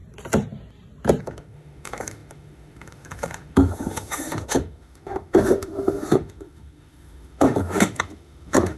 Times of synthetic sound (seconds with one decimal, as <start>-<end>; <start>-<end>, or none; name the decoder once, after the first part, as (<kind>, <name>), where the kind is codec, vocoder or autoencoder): 1.2-8.8 (autoencoder, DAC-VAE)